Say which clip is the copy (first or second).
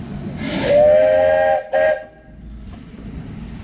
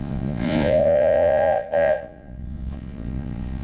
second